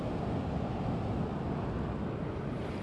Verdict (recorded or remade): recorded